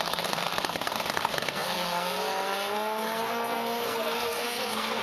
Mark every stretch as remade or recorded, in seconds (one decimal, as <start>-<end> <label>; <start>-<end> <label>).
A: 0.0-5.0 remade